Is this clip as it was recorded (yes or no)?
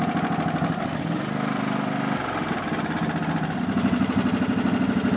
no